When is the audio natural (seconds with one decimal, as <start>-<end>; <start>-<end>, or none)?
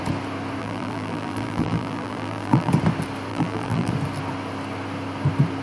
0.0-0.6; 2.7-3.3; 3.9-5.6